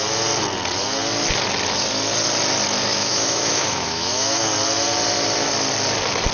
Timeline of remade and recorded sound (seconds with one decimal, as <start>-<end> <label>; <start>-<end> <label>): 0.0-2.9 recorded; 2.9-4.4 remade; 4.4-6.3 recorded